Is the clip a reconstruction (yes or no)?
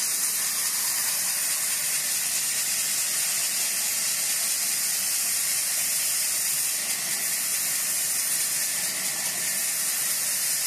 no